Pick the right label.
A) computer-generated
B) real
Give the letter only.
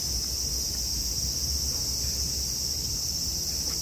B